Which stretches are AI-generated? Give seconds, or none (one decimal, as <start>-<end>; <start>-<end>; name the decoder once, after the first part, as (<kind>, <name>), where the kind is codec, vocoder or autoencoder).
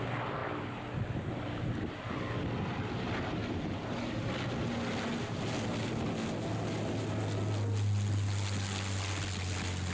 none